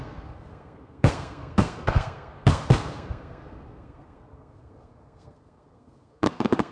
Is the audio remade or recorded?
remade